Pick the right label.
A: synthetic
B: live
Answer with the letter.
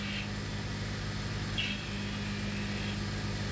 B